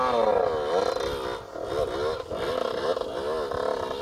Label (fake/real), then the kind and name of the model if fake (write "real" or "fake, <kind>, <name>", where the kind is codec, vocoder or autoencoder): real